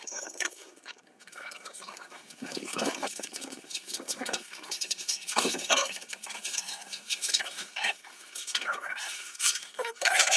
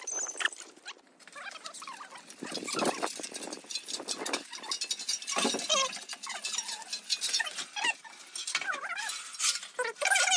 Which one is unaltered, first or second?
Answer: second